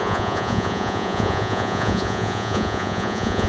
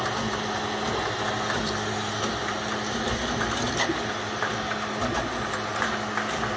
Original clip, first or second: second